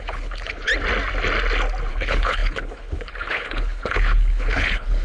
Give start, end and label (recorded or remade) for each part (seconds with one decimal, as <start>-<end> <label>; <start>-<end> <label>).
0.0-0.7 remade; 0.7-1.9 recorded; 1.9-5.0 remade